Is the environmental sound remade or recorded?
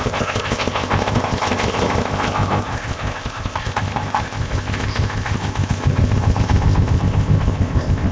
remade